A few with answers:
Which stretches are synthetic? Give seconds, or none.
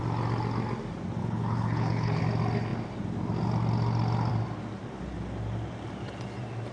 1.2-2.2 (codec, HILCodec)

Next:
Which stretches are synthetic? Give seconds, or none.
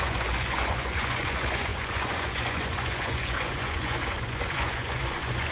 0.0-5.5 (vocoder, Vocos)